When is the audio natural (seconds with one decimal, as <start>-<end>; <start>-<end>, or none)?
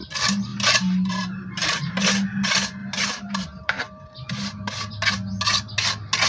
0.0-0.5; 1.9-2.8; 3.8-6.3